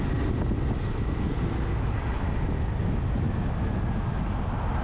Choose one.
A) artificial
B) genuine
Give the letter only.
B